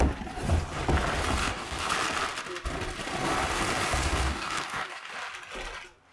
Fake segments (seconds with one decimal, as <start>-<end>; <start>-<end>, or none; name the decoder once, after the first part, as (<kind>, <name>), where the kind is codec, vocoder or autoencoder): 1.4-1.9 (codec, DAC); 4.0-5.1